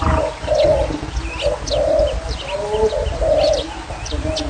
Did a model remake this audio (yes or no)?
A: no